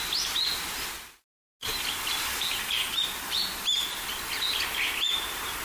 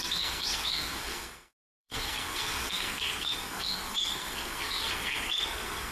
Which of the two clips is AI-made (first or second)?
second